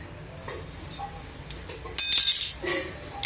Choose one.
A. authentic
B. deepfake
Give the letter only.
A